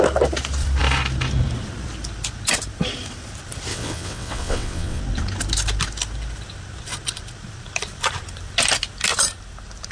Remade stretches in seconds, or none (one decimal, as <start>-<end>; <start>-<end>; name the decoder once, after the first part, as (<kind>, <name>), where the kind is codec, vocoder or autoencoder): 3.7-5.0 (vocoder, WaveNeXt)